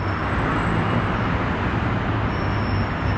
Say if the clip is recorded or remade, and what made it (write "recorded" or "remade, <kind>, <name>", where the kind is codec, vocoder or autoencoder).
recorded